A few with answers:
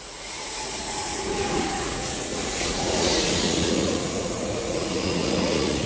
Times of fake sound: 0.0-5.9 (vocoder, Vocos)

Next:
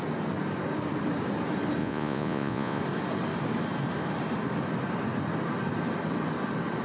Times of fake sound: 1.8-2.8 (vocoder, Vocos)

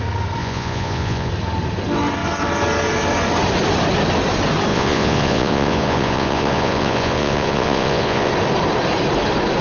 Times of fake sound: 0.4-1.3 (vocoder, Vocos); 4.7-8.3